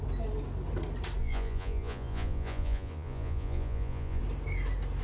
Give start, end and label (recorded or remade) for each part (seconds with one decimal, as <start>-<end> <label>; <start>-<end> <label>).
0.0-1.2 recorded; 1.2-4.2 remade; 4.2-5.0 recorded